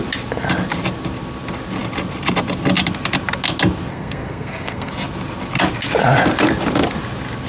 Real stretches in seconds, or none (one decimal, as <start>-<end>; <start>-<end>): 0.0-3.9; 4.9-7.5